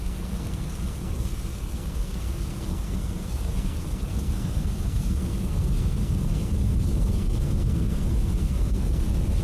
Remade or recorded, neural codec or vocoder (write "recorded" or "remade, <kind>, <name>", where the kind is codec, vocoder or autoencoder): remade, codec, SNAC